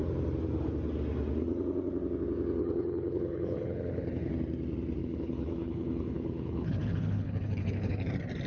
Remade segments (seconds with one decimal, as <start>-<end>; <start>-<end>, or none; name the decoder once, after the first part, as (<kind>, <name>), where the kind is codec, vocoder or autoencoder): 2.6-4.3 (codec, HILCodec); 5.0-8.1